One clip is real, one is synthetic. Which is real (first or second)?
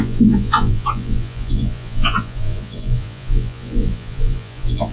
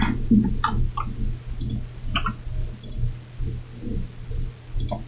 second